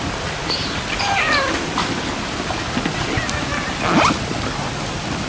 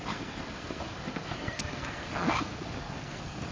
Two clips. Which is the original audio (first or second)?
first